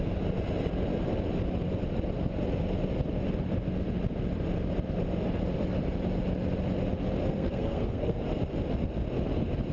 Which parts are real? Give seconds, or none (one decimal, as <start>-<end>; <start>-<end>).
0.0-7.3; 8.2-9.7